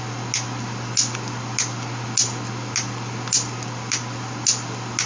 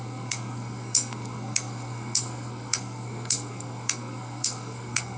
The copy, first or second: second